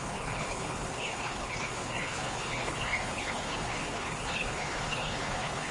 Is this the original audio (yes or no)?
no